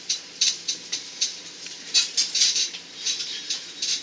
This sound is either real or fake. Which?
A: fake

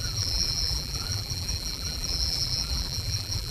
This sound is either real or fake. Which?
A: fake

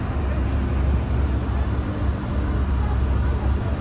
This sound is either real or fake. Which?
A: real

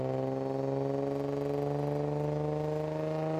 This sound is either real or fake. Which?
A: real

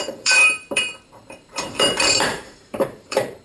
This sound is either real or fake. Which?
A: fake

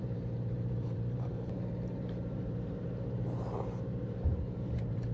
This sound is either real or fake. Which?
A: fake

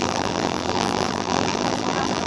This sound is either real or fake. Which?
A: fake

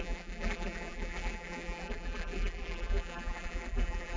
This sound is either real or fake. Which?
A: fake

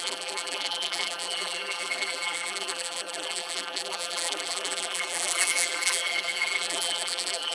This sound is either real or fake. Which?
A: fake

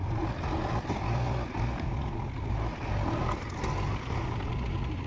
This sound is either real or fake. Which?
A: real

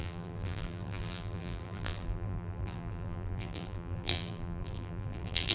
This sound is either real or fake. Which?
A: fake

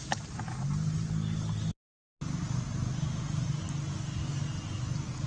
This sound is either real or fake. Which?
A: real